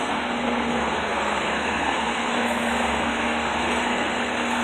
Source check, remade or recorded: remade